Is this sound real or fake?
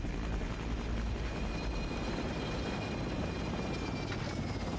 real